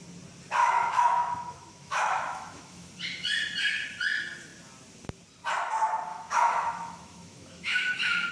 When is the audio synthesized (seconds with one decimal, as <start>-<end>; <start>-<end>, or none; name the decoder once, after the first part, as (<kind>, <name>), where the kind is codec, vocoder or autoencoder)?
0.6-2.9 (autoencoder, DAC-VAE); 6.1-8.3